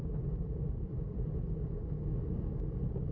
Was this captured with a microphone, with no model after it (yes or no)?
yes